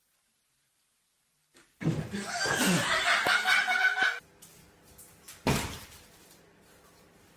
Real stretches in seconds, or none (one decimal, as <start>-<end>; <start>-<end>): 0.0-7.4